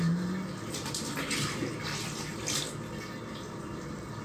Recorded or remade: recorded